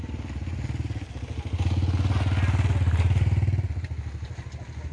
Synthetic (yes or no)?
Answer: no